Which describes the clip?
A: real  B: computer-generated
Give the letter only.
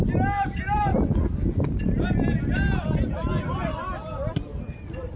A